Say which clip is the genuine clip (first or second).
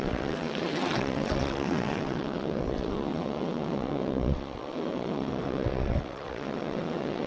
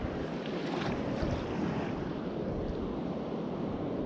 second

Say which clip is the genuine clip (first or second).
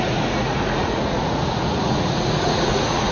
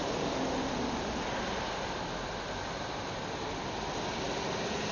second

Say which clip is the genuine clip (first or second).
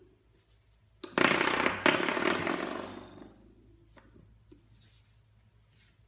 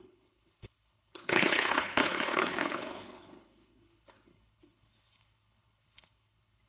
first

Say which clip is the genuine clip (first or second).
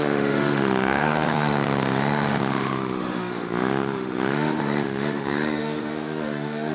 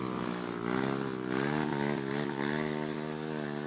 second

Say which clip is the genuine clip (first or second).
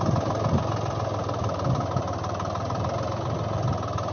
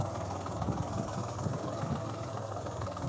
first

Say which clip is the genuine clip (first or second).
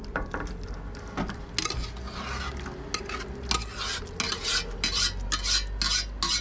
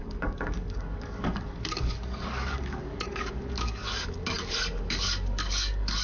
first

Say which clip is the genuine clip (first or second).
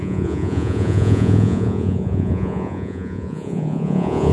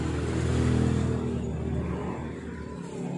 second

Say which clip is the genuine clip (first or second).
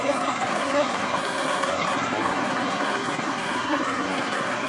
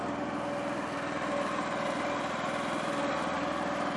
second